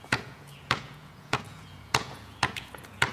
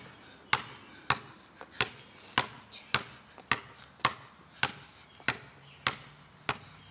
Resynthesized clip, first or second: first